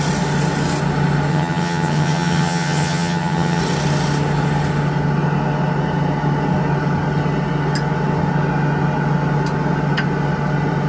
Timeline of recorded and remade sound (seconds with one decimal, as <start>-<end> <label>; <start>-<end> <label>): 0.0-1.3 recorded; 1.3-3.6 remade; 3.6-10.9 recorded